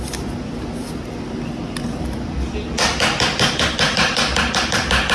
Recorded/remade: recorded